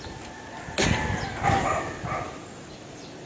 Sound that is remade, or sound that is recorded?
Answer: recorded